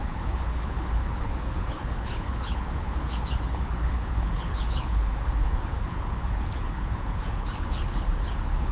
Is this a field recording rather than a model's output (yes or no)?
no